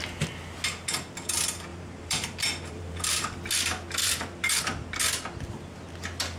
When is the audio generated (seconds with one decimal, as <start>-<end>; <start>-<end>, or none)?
1.7-3.5; 4.0-4.6